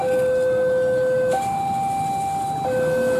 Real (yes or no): yes